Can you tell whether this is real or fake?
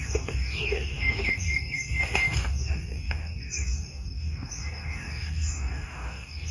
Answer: fake